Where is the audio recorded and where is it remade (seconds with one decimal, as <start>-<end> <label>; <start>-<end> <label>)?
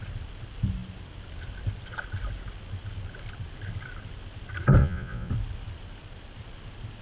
0.0-4.8 recorded; 4.8-5.3 remade; 5.3-7.0 recorded